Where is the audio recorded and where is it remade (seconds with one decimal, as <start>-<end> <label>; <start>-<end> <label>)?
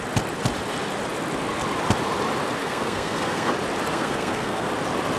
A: 0.0-2.6 recorded; 2.6-3.5 remade; 3.5-3.9 recorded; 3.9-4.7 remade; 4.7-5.2 recorded